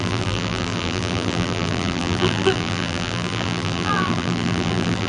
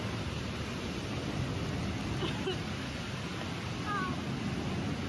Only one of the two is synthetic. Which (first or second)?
first